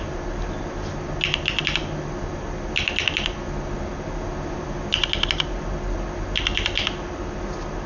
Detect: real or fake real